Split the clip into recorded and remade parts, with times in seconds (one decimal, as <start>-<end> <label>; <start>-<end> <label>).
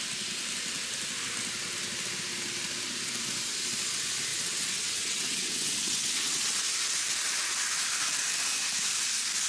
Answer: 0.0-4.3 recorded; 4.3-6.6 remade; 6.6-9.5 recorded